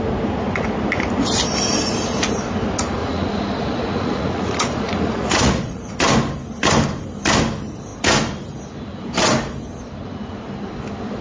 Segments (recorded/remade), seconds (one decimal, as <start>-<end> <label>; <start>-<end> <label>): 0.0-3.0 recorded; 3.0-5.9 remade; 5.9-11.2 recorded